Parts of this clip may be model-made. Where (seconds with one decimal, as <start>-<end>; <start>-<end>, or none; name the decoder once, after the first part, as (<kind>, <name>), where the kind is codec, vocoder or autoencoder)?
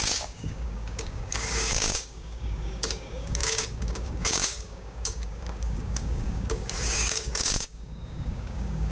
0.0-8.9 (codec, DAC)